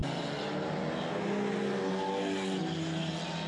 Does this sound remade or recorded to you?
recorded